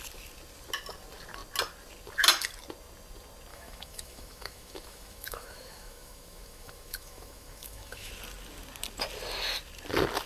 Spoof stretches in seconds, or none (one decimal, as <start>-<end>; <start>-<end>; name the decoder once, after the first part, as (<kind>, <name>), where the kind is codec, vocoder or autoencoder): 3.5-8.1 (autoencoder, DAC-VAE)